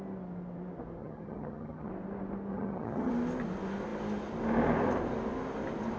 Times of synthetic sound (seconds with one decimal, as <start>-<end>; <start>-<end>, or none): 1.0-1.9; 2.5-3.1